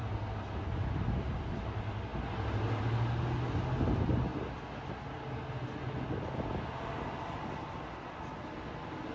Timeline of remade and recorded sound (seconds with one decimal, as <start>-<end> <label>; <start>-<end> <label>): 0.0-9.1 recorded